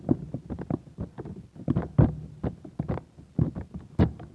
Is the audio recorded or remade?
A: recorded